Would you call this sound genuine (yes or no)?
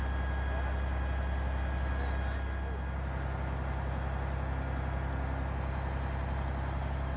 yes